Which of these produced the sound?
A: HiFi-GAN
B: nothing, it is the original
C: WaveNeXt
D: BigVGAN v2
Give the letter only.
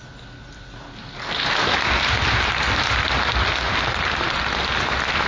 B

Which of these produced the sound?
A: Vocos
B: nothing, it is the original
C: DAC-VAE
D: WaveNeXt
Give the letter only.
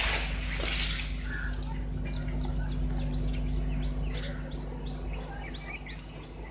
B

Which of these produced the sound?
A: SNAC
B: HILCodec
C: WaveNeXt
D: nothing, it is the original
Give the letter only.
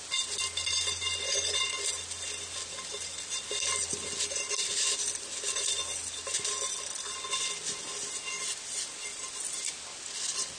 D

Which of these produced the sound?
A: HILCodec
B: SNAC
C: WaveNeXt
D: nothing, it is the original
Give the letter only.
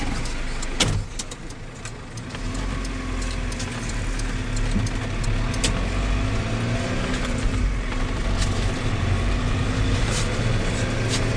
D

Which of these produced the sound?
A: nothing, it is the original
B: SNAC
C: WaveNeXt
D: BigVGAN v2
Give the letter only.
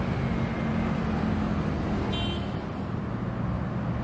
A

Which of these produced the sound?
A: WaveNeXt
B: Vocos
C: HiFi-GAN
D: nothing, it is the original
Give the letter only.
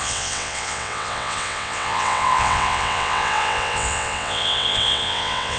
A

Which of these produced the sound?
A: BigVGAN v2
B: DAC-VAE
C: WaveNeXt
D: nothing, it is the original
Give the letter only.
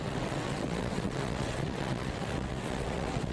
C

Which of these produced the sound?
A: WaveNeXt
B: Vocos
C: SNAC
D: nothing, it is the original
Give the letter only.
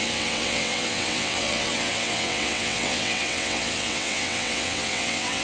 A